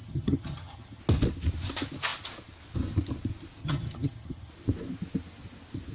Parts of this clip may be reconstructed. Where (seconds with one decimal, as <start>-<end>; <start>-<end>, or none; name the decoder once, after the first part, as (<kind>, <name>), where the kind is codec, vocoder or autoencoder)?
0.0-1.0 (vocoder, HiFi-GAN); 3.6-4.5